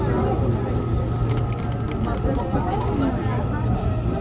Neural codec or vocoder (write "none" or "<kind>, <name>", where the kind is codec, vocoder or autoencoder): none